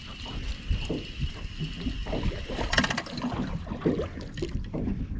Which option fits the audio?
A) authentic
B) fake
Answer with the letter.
A